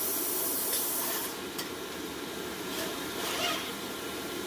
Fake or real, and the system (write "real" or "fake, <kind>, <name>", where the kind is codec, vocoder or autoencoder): fake, vocoder, BigVGAN v2